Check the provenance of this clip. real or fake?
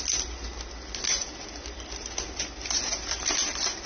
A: real